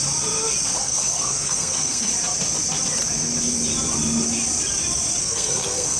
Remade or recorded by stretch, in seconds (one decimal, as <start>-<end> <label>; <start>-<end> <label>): 0.0-0.8 recorded; 0.8-2.1 remade; 2.1-5.2 recorded; 5.2-6.0 remade